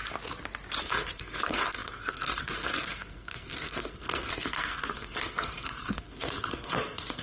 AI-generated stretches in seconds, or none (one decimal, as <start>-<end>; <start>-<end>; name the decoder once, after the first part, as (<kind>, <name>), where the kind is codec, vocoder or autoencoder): 0.8-7.2 (codec, SNAC)